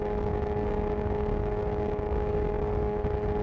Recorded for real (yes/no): no